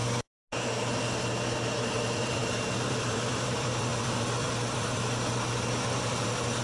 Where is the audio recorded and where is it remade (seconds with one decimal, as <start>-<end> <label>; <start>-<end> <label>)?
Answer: 0.0-1.8 recorded; 1.8-6.6 remade